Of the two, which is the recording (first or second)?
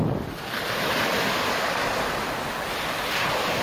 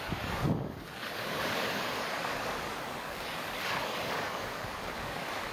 first